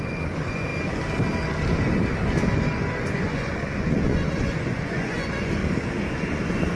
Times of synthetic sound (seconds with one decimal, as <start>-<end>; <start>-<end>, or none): 0.0-0.7; 3.0-5.6; 6.1-6.8